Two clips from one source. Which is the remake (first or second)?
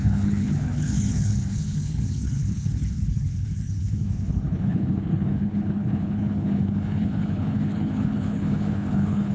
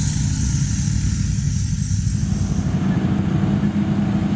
first